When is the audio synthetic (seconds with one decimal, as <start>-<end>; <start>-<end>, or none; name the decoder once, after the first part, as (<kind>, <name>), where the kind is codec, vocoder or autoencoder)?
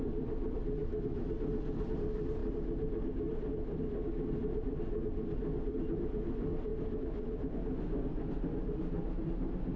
0.8-1.3 (autoencoder, DAC-VAE)